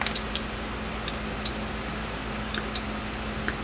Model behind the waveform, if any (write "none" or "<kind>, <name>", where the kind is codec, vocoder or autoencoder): none